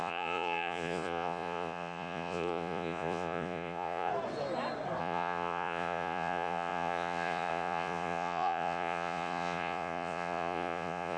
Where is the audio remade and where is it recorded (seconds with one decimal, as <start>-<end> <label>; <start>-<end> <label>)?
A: 0.0-4.1 remade; 4.1-5.0 recorded; 5.0-11.2 remade